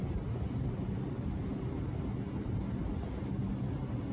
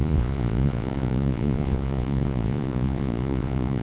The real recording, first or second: first